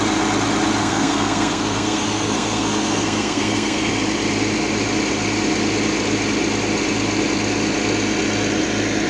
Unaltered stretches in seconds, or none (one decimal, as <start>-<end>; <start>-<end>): 0.0-0.8; 3.9-9.1